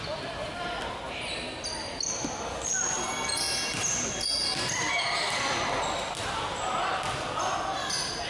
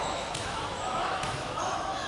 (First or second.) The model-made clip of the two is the second